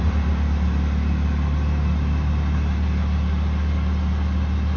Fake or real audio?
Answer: real